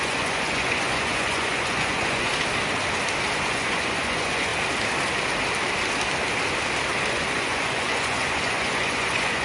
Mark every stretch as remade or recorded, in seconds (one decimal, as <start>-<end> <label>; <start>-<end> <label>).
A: 0.0-2.3 remade; 2.3-3.3 recorded; 3.3-4.5 remade; 4.5-7.1 recorded; 7.1-9.4 remade